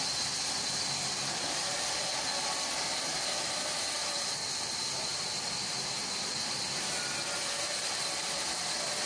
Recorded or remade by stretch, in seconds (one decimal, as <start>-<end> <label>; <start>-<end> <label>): 0.0-9.1 recorded